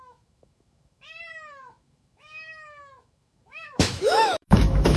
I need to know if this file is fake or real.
fake